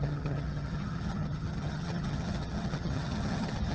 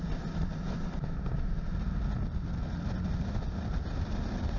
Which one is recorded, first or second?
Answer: second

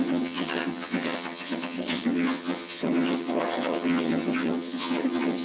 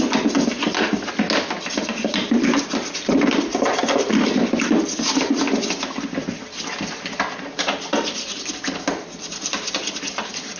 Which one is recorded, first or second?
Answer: second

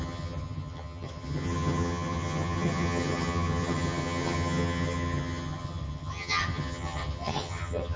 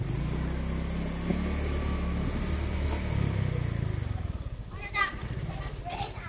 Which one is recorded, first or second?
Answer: second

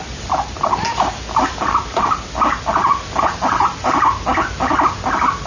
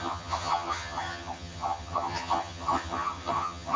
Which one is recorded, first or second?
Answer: first